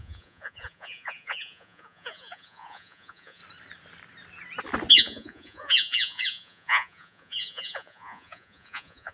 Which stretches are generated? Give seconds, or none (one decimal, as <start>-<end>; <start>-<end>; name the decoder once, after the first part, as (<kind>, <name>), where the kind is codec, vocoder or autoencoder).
0.0-3.4 (vocoder, Vocos); 4.9-9.1